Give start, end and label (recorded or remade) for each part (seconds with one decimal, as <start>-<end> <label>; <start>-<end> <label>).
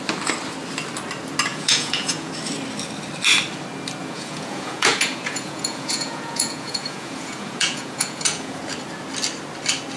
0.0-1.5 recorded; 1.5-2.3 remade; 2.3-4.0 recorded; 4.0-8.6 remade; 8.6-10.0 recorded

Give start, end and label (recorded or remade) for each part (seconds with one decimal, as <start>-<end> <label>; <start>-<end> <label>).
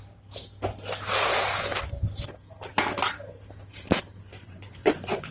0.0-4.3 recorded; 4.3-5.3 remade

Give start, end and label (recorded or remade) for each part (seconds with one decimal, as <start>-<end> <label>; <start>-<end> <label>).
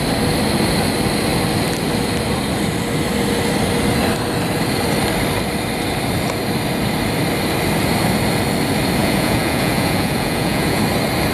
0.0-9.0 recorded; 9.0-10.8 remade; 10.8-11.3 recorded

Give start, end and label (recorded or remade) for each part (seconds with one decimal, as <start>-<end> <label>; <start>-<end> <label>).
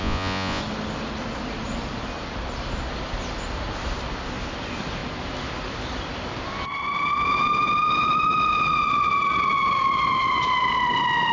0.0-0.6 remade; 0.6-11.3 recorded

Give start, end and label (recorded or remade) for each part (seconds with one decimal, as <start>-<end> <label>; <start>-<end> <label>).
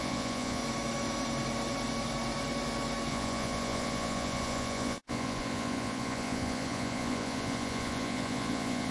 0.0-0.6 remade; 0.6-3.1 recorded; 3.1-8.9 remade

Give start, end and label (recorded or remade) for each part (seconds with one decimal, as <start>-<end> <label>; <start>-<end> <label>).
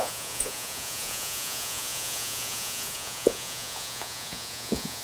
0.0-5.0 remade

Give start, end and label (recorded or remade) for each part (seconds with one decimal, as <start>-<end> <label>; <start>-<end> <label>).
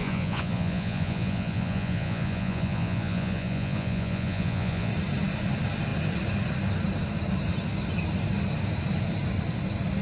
0.0-4.9 remade; 4.9-10.0 recorded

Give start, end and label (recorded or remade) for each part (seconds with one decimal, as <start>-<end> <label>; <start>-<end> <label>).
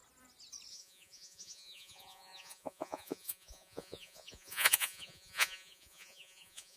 0.0-0.7 recorded; 0.7-6.8 remade